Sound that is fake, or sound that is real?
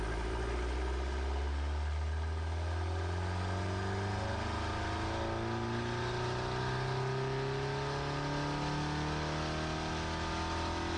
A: real